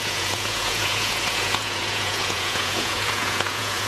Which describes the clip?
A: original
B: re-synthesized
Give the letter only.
B